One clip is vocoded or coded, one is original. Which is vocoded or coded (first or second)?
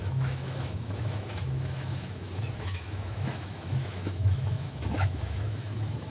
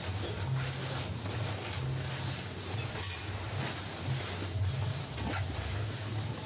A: first